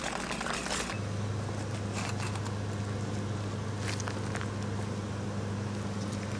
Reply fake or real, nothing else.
real